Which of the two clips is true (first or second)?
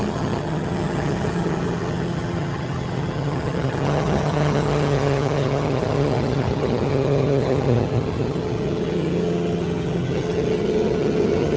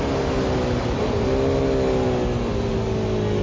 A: second